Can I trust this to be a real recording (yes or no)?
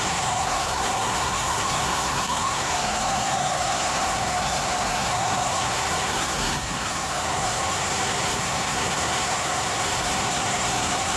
no